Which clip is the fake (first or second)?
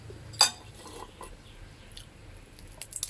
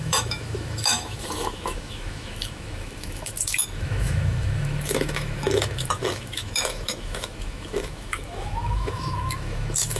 second